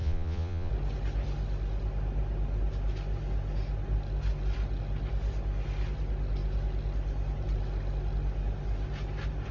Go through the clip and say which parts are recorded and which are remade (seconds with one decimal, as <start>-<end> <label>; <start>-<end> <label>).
0.0-0.7 remade; 0.7-9.5 recorded